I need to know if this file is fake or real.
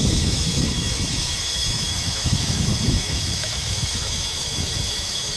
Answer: fake